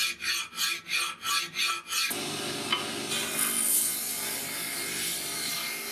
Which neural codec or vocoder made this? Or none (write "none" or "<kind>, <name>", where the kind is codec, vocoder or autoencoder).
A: none